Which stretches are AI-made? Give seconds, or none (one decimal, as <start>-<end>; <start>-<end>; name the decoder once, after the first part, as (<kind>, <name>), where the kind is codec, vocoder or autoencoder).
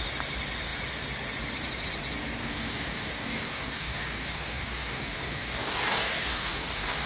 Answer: 2.4-7.1 (codec, DAC)